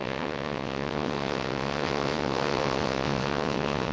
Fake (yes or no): yes